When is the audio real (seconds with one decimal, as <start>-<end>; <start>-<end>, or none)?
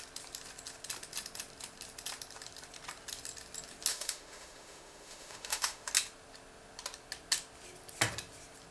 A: 0.0-3.9; 5.9-8.7